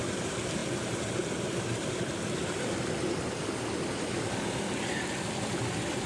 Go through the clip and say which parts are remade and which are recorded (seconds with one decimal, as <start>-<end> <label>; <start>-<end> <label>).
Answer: 0.0-6.1 recorded

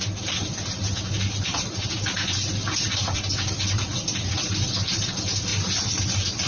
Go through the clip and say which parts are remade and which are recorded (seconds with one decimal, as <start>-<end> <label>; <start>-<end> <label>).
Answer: 0.0-6.5 recorded

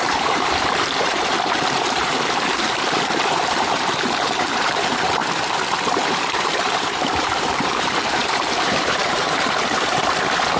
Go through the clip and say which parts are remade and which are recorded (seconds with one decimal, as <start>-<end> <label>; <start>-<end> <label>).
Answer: 0.0-5.2 remade; 5.2-6.0 recorded; 6.0-10.6 remade